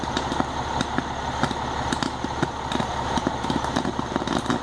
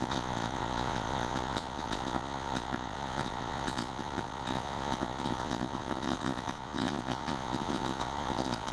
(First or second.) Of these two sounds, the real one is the first